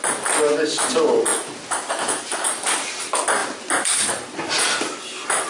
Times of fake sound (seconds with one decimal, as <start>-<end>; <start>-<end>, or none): none